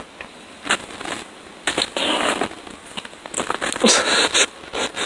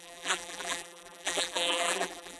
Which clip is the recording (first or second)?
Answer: first